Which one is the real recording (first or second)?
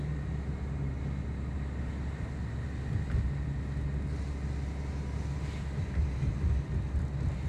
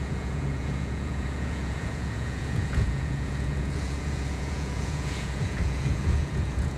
first